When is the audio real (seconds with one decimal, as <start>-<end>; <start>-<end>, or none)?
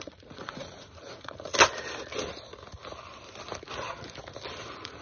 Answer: 1.5-4.5